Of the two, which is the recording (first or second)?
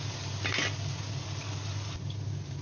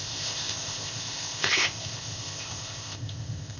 first